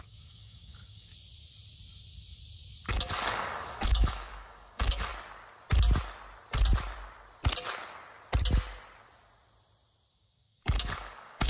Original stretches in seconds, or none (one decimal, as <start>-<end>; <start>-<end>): 1.1-2.9; 5.1-10.1

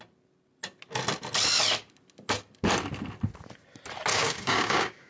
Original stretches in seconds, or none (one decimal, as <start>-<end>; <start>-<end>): 0.0-4.1

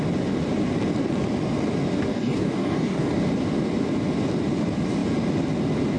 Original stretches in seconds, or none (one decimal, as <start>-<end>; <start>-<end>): 0.0-2.1; 3.2-6.0

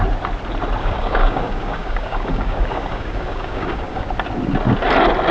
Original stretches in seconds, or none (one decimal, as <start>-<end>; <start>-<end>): 0.0-0.8; 4.0-5.3

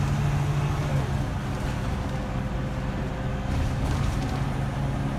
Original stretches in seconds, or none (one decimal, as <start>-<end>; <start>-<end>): 0.0-1.9; 2.5-3.3; 4.1-5.2

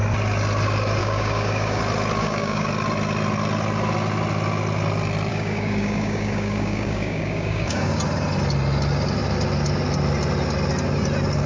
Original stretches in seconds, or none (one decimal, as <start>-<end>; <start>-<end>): 0.0-1.0; 1.8-2.2; 2.7-5.3; 8.0-11.5

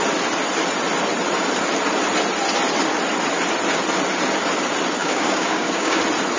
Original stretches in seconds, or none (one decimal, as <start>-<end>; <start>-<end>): 0.0-5.0; 6.0-6.4